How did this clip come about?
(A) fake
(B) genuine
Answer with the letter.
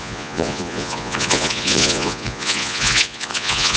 A